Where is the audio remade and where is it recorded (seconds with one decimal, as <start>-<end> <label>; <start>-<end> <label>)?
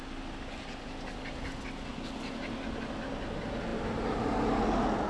0.0-5.1 recorded